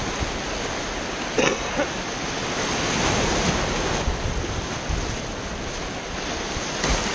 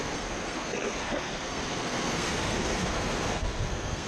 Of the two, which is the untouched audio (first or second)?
first